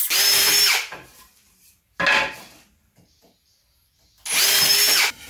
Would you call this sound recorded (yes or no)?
yes